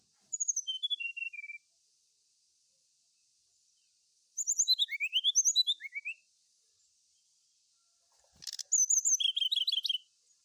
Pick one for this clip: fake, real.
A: real